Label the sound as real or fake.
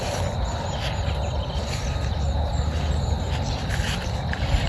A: real